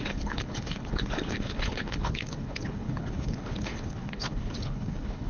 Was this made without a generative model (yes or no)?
no